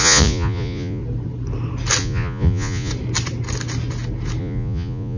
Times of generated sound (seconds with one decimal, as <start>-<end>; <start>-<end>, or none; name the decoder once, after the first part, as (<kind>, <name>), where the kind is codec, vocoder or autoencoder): 0.0-1.0 (vocoder, Vocos); 2.0-2.9; 4.4-5.2